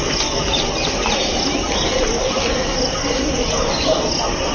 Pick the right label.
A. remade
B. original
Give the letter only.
B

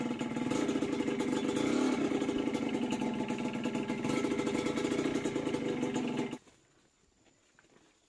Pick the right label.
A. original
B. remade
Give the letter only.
A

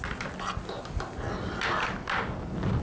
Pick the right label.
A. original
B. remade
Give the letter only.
A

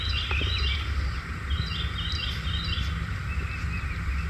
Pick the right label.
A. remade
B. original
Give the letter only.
A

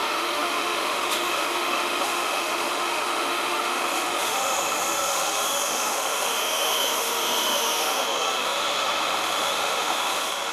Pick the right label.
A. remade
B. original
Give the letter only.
A